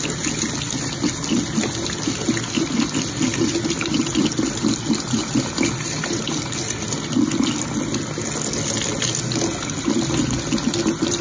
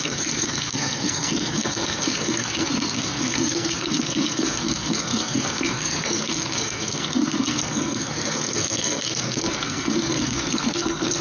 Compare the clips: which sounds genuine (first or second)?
first